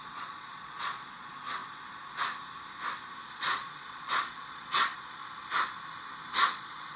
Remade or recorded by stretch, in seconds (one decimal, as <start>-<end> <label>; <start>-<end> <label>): 0.0-1.6 remade; 1.6-3.2 recorded; 3.2-5.2 remade; 5.2-6.3 recorded; 6.3-7.0 remade